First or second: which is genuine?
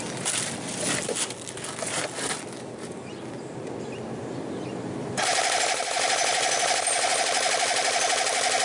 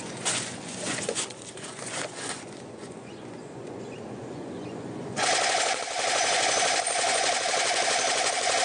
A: first